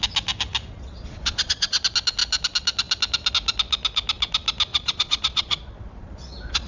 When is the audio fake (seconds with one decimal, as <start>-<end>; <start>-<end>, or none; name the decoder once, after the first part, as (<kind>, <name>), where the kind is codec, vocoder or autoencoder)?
0.9-1.8 (vocoder, Vocos); 4.7-6.7